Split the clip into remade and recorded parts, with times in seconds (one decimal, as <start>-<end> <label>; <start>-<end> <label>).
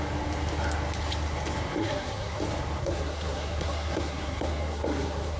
0.0-1.8 recorded; 1.8-2.4 remade; 2.4-2.8 recorded; 2.8-5.4 remade